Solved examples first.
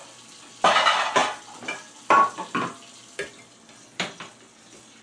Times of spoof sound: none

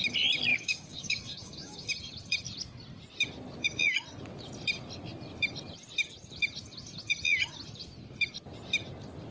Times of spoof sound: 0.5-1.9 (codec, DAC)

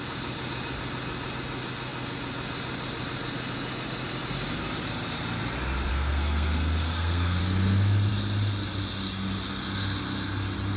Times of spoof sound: 5.9-7.4 (codec, SNAC)

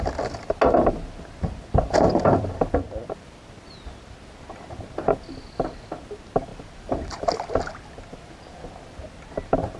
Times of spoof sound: 6.5-7.5 (vocoder, BigVGAN v2)

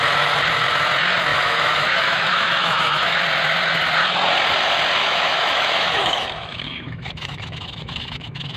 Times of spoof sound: 1.3-3.2 (autoencoder, DAC-VAE); 5.0-8.6

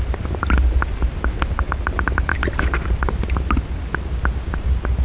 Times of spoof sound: none

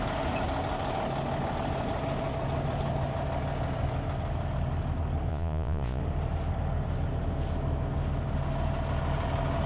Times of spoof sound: 5.3-6.0 (vocoder, Vocos)

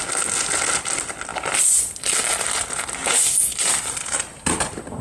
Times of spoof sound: none